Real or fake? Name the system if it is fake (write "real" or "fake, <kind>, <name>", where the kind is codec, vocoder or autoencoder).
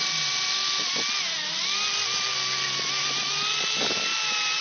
real